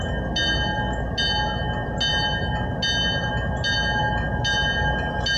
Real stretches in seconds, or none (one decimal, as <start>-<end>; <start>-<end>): 0.0-5.4